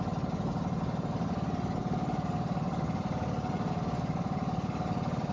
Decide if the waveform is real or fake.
real